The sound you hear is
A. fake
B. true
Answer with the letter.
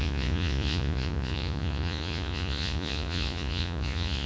A